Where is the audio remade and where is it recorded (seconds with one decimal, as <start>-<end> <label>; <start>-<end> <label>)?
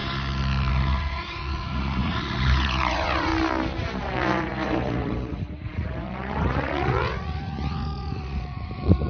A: 0.0-0.7 recorded; 0.7-3.3 remade; 3.3-4.0 recorded; 4.0-9.1 remade